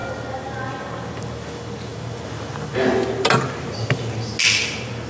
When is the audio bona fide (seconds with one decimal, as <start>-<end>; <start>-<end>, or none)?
0.0-5.1